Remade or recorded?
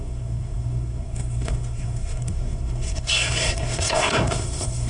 remade